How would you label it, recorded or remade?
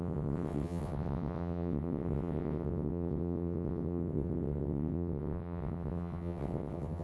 remade